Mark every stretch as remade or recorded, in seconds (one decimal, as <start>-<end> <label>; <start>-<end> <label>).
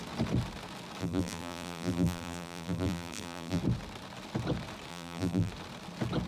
0.0-1.0 recorded; 1.0-3.6 remade; 3.6-4.9 recorded; 4.9-5.5 remade; 5.5-6.3 recorded